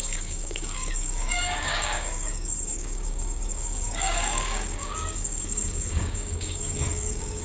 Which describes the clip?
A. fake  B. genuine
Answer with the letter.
A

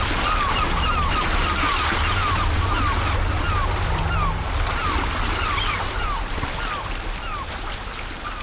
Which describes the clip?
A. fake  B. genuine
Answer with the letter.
B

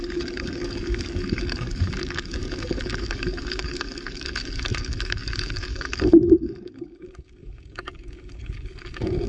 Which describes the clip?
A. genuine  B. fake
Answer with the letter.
B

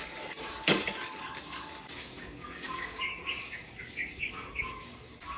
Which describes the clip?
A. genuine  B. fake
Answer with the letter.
B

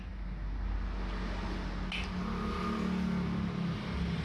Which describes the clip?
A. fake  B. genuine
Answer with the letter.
B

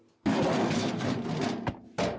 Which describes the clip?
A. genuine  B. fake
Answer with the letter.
A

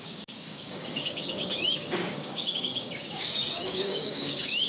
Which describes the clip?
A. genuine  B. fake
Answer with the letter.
B